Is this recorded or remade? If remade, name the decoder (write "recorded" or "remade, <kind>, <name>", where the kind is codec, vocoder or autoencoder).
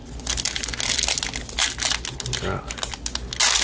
recorded